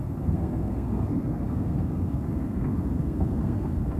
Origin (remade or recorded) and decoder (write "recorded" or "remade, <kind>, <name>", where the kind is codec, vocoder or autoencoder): remade, codec, SNAC